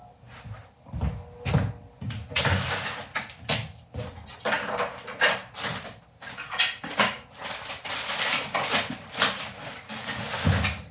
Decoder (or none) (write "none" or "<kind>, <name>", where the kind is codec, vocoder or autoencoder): none